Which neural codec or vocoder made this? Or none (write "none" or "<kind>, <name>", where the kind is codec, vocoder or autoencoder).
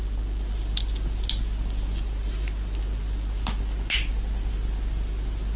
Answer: none